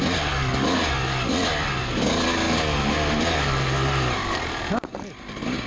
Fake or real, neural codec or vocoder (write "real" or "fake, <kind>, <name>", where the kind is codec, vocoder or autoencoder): real